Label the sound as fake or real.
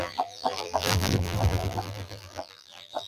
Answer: fake